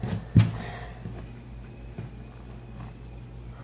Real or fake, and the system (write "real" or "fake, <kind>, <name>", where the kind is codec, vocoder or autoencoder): real